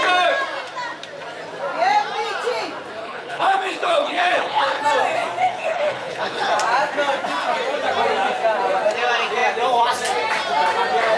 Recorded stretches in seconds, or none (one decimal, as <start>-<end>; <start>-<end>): 0.0-3.0; 4.8-5.4; 6.5-11.2